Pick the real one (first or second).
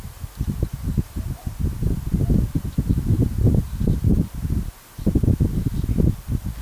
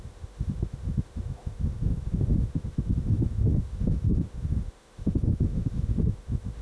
first